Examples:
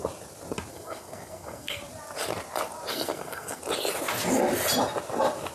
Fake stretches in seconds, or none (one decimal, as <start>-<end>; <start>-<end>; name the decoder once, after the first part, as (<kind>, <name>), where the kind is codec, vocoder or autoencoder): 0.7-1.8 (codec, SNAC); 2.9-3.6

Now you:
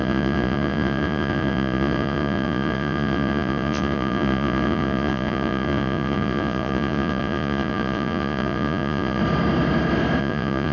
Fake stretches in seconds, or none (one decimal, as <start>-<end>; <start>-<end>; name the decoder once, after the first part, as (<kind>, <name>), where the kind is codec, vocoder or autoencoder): 0.0-9.2 (vocoder, Vocos); 10.2-10.7

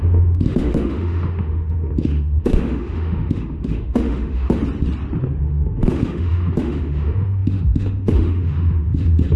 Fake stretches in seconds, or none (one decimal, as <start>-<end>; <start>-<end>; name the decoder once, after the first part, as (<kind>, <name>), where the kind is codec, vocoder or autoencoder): 0.0-4.6 (autoencoder, DAC-VAE); 5.4-9.4

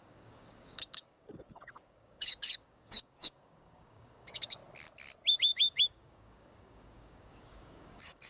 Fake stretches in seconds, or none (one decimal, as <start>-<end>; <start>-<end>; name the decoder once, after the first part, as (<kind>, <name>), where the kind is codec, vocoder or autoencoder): 0.0-4.6 (codec, DAC); 5.3-8.3